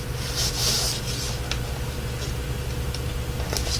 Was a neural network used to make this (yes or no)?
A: no